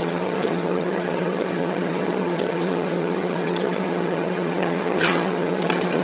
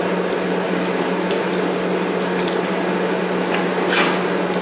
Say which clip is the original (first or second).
second